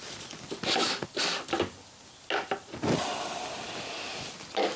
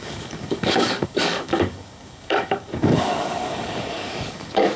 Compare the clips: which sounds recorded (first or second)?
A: first